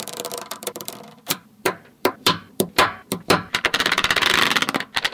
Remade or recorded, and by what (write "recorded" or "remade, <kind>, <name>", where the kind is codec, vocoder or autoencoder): remade, vocoder, BigVGAN v2